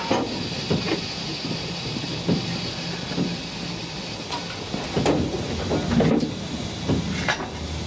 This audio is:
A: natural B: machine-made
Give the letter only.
A